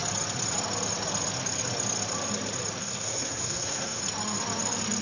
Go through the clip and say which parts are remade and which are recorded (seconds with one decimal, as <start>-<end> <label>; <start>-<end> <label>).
0.0-2.8 recorded; 2.8-4.0 remade; 4.0-5.0 recorded